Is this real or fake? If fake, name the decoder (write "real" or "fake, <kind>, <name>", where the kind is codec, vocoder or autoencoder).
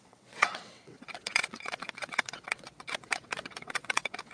fake, vocoder, WaveNeXt